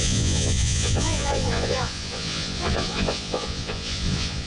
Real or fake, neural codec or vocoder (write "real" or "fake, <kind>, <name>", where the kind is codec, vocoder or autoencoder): fake, vocoder, Vocos